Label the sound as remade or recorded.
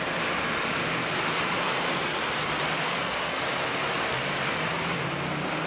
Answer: recorded